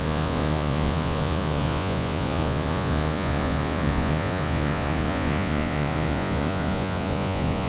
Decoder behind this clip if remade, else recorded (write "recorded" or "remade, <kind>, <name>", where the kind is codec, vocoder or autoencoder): remade, vocoder, Vocos